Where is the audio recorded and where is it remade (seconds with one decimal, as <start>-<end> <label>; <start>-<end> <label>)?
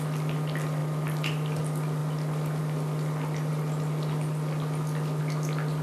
0.0-5.8 recorded